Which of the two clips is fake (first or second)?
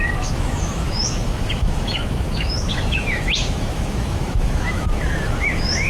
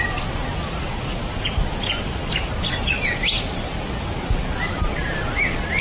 first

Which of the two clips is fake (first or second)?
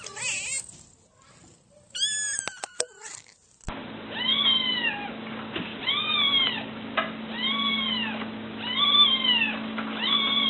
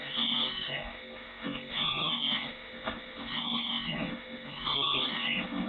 second